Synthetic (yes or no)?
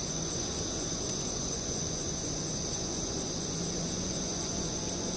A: yes